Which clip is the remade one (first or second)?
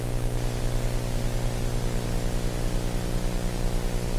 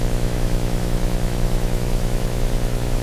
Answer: second